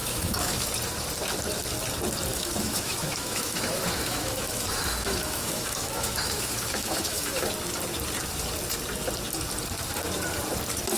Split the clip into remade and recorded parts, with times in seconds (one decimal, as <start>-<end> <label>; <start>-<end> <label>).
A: 0.0-0.7 remade; 0.7-2.3 recorded; 2.3-7.5 remade; 7.5-11.0 recorded